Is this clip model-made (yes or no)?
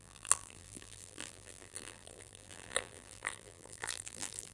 yes